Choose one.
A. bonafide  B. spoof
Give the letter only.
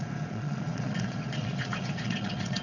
B